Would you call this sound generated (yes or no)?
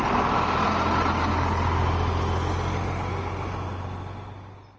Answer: no